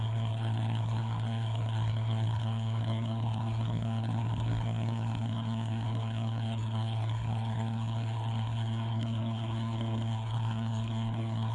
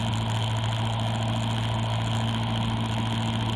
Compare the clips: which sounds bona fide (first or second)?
second